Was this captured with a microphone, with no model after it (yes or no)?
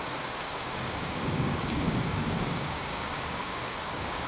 no